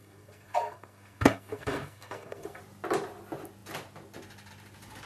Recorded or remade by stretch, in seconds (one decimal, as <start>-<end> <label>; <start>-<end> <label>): 0.0-2.6 remade; 2.6-5.1 recorded